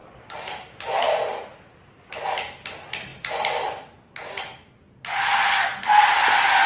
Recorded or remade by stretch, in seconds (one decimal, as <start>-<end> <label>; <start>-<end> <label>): 0.0-6.7 recorded